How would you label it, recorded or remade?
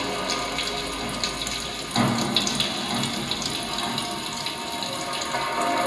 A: recorded